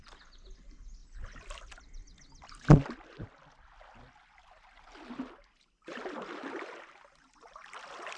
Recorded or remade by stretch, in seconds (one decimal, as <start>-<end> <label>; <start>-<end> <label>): 0.0-8.2 recorded